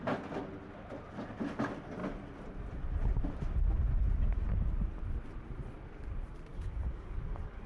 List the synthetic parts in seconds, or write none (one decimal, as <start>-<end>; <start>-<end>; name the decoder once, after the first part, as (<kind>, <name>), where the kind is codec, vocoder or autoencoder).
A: 6.5-7.7 (codec, DAC)

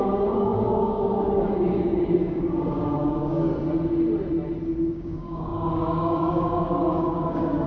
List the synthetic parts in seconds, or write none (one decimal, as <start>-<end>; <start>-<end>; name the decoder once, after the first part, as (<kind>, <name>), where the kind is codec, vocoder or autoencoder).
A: 0.0-3.5 (codec, DAC); 4.9-7.7

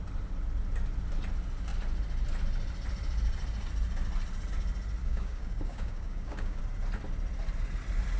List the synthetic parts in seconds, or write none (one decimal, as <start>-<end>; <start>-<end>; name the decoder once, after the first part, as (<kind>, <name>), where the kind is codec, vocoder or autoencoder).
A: 5.0-6.6 (codec, DAC)

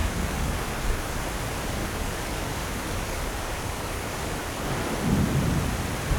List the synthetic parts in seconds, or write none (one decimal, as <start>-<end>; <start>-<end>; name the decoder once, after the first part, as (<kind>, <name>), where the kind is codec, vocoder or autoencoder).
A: 0.0-1.2 (codec, DAC); 1.8-4.7